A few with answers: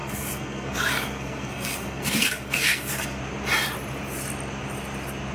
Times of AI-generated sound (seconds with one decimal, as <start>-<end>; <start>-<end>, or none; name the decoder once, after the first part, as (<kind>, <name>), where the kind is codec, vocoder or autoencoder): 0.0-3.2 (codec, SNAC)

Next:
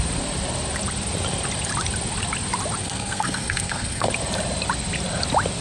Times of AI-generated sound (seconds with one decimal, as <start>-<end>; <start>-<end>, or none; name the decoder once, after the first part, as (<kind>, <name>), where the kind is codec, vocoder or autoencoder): 2.8-4.1 (codec, SNAC)

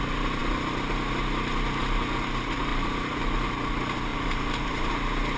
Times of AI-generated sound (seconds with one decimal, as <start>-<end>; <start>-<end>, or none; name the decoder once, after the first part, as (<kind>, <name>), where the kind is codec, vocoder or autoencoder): 2.7-3.3 (vocoder, BigVGAN v2); 4.1-4.9

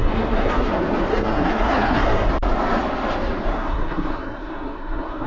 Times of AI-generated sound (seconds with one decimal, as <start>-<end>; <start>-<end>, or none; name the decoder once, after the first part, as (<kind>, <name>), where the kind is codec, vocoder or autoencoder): 0.0-0.7 (codec, SNAC); 1.1-2.3; 3.5-5.3

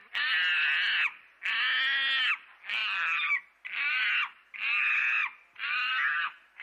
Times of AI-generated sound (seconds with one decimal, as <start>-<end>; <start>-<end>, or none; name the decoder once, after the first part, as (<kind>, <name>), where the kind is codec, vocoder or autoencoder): none